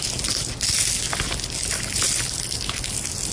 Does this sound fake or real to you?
real